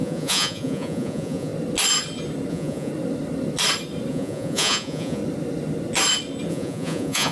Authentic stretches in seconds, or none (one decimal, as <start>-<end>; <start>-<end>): 1.5-2.5; 2.9-4.1; 5.2-6.5